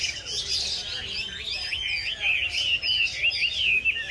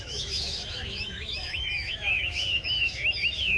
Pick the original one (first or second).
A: first